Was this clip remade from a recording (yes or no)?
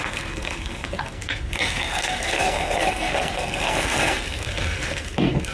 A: yes